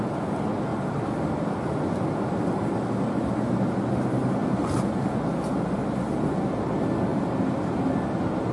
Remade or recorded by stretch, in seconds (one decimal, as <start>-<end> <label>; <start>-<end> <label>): 0.0-8.5 recorded